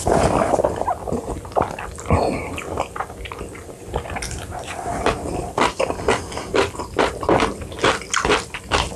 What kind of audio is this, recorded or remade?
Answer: remade